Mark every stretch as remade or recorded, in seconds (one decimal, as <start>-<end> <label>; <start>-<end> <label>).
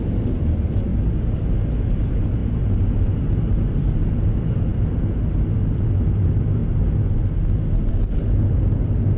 0.0-9.2 recorded